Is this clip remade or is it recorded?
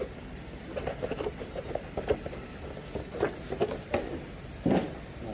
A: remade